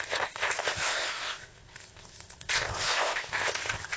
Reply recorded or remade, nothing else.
remade